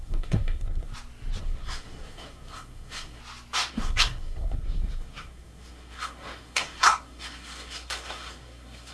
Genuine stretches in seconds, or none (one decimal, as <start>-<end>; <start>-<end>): 0.9-1.4; 3.2-3.7

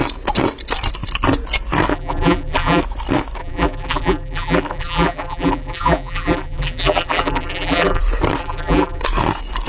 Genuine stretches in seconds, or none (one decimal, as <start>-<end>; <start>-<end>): 0.0-1.9; 2.8-3.4; 8.0-8.4; 9.0-9.7

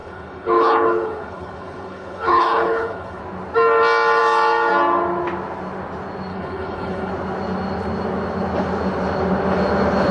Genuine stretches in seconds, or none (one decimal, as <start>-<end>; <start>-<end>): 3.2-6.3; 7.1-10.1

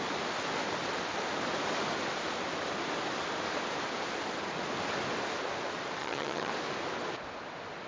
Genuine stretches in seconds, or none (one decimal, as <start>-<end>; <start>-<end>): 0.0-6.0; 6.5-7.9

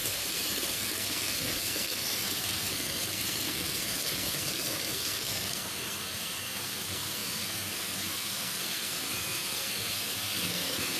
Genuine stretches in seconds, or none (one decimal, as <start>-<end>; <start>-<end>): none

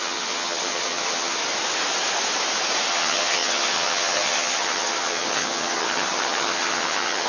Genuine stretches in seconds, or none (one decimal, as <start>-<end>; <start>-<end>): 1.4-2.9

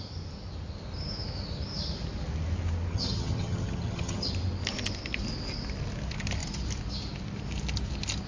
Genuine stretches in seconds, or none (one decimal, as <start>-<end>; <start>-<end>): 0.0-2.9; 4.3-8.3

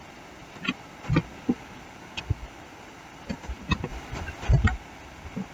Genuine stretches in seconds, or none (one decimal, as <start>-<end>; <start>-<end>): 0.0-3.9; 4.5-5.5